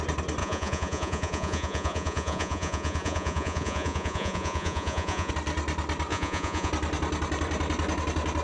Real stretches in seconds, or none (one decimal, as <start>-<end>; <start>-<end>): 0.0-0.4; 5.3-6.1; 6.7-8.4